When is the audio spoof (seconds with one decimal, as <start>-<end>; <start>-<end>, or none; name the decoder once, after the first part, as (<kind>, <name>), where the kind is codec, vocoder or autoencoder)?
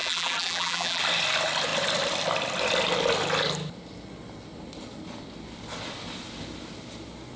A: 0.0-1.0 (vocoder, BigVGAN v2)